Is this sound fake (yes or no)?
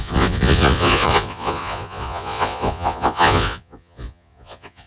yes